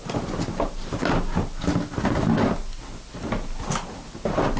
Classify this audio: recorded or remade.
recorded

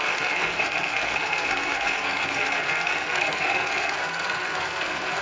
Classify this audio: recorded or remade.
remade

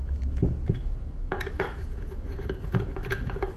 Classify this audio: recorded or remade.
remade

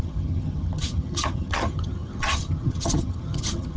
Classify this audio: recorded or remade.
remade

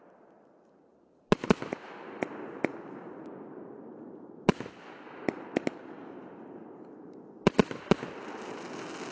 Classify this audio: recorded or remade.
recorded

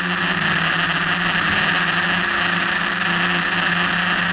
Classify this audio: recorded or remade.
recorded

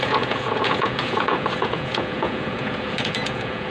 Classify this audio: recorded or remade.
remade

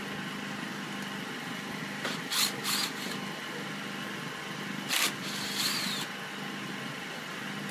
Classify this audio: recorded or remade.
recorded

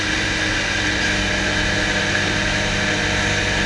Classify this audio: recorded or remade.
recorded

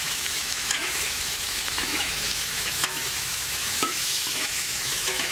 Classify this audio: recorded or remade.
remade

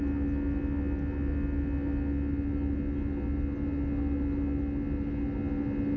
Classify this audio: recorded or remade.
recorded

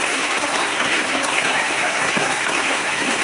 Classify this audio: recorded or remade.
remade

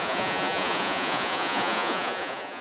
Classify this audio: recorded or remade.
remade